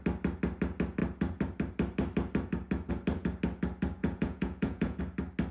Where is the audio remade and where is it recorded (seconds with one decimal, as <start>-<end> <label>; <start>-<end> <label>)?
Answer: 0.0-4.0 recorded; 4.0-5.0 remade; 5.0-5.5 recorded